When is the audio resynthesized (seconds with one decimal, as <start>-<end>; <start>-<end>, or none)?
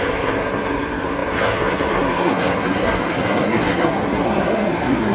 0.0-5.1